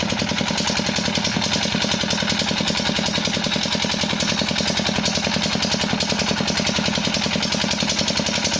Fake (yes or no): no